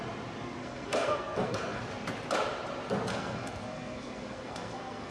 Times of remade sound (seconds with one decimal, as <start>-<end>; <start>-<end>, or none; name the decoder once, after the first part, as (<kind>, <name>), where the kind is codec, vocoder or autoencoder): 0.6-1.8 (codec, SNAC); 3.1-5.1

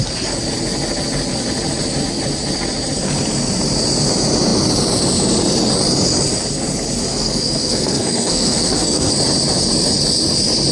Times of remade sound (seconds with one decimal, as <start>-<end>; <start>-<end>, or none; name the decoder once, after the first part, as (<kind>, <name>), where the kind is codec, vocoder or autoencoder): 7.1-9.1 (codec, SNAC)